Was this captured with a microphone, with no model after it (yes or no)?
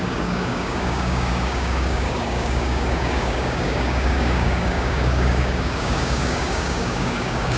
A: no